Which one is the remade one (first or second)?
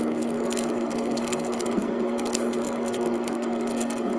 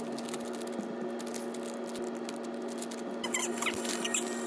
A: first